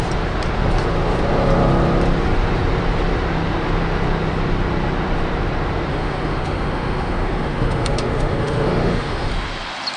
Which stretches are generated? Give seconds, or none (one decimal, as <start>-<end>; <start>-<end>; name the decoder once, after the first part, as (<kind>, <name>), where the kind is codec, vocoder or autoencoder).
5.9-9.3 (autoencoder, DAC-VAE)